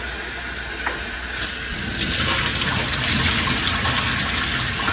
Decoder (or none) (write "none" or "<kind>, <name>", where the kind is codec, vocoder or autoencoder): none